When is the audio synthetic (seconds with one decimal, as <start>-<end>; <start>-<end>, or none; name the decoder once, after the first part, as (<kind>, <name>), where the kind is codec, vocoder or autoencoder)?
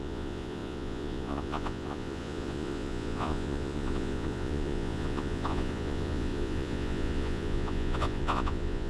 0.0-8.9 (vocoder, Vocos)